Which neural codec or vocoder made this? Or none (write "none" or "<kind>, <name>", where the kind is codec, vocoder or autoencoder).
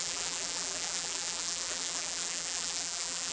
vocoder, BigVGAN v2